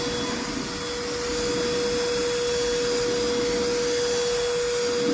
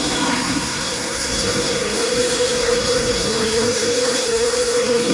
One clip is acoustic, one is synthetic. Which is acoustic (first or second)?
first